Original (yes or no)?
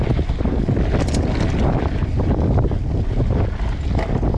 yes